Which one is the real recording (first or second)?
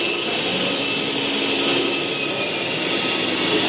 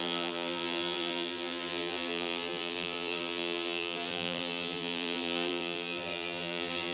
first